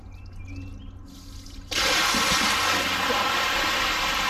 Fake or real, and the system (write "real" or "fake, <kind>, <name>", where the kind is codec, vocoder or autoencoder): real